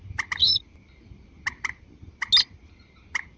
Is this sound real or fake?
real